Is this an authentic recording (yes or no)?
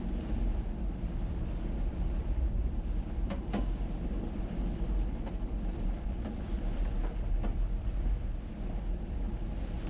no